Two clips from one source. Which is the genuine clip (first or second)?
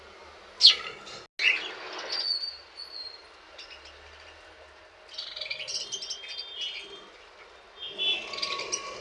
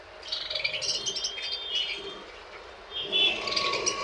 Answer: first